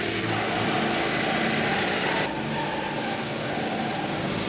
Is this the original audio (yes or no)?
yes